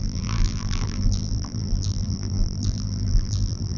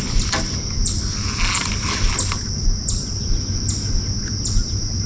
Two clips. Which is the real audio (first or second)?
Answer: second